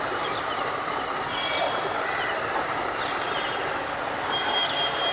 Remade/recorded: remade